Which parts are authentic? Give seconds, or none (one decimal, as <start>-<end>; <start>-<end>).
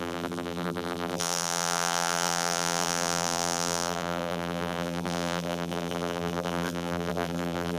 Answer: none